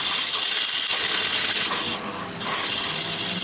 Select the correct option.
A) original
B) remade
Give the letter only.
A